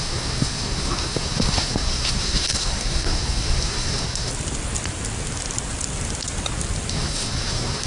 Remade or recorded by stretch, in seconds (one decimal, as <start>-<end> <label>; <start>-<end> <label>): 0.0-4.3 remade; 4.3-6.9 recorded; 6.9-7.9 remade